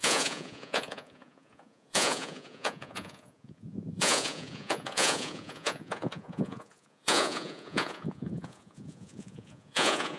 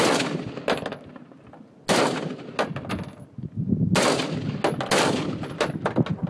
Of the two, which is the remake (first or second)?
first